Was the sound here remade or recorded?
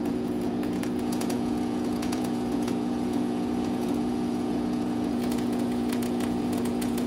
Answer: remade